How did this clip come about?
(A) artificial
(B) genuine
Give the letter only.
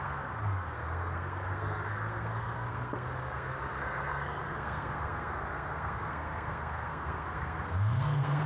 A